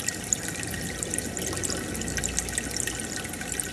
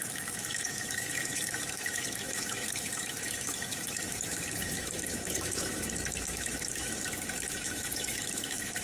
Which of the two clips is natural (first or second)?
first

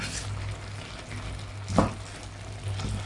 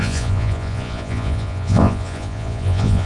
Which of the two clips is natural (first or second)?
first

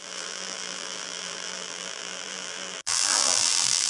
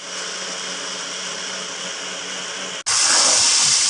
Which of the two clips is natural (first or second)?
second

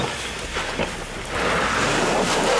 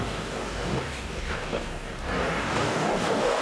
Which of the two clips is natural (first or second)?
first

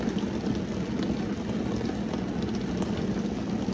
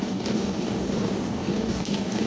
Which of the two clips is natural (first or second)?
first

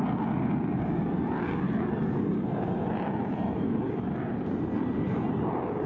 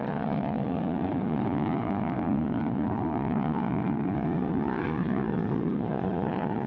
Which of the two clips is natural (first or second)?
first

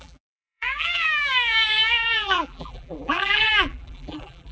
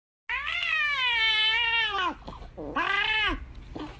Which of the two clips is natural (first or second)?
second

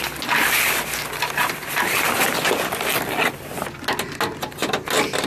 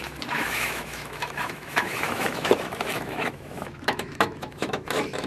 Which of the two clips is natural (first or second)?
first